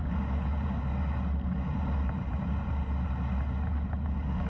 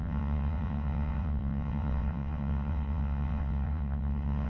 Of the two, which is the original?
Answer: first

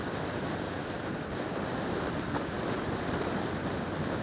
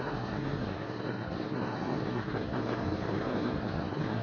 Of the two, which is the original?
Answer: first